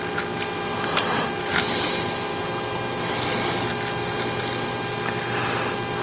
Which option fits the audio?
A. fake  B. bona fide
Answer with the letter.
B